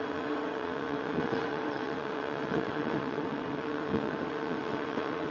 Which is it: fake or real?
fake